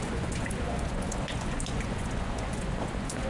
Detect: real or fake fake